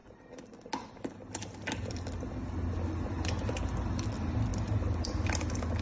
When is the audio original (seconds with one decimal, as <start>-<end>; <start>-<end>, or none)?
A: 0.0-5.8